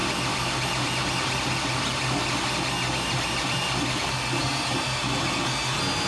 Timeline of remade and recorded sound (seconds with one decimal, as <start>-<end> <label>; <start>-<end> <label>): 0.0-4.4 recorded; 4.4-5.0 remade; 5.0-6.1 recorded